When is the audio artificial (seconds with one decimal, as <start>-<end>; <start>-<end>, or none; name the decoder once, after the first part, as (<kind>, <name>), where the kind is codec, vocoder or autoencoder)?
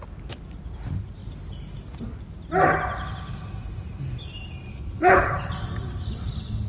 4.7-5.5 (codec, HILCodec)